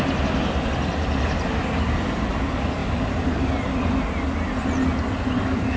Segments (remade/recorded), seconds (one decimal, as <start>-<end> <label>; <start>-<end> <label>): 0.0-2.8 recorded; 2.8-3.4 remade; 3.4-5.8 recorded